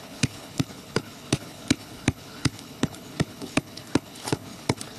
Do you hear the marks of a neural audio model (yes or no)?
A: yes